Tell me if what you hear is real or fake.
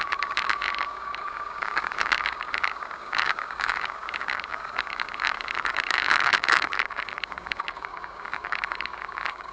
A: fake